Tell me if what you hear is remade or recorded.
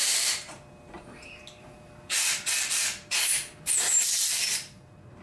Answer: remade